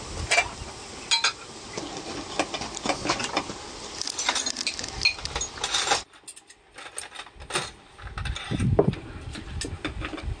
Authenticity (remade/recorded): recorded